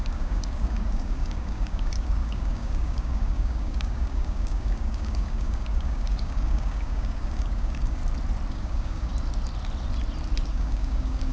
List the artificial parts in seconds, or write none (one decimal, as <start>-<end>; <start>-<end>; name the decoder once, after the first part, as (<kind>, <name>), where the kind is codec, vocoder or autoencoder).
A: 0.0-8.0 (codec, DAC); 8.5-9.1; 10.5-11.3